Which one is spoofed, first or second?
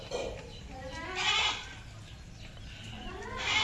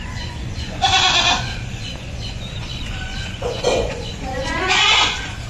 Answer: second